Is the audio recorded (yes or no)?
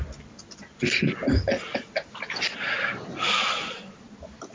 yes